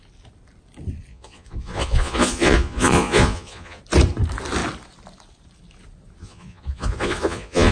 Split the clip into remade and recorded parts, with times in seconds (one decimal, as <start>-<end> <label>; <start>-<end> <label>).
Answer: 0.0-1.1 recorded; 1.1-3.8 remade; 3.8-6.2 recorded; 6.2-7.7 remade